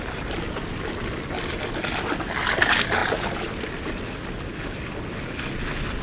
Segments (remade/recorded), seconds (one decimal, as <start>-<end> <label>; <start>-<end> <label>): 0.0-6.0 recorded